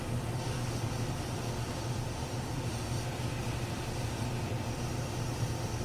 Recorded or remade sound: remade